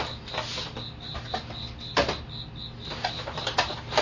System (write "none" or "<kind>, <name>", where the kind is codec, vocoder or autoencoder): none